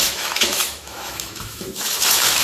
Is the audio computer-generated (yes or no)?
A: yes